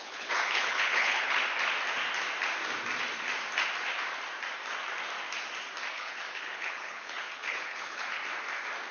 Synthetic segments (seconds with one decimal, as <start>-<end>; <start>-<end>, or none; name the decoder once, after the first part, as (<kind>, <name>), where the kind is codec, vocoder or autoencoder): 0.0-1.4 (codec, HILCodec); 5.9-8.2